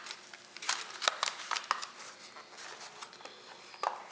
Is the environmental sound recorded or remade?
recorded